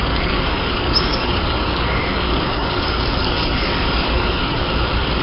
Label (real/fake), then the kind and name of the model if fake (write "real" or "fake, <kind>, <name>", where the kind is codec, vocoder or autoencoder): fake, codec, DAC